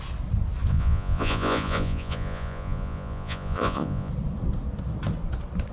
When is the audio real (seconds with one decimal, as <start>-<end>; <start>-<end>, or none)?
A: 0.0-0.7; 4.1-5.7